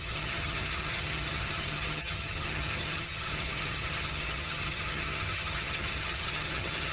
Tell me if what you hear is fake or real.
fake